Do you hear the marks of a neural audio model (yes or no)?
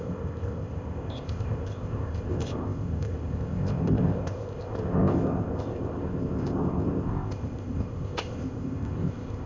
yes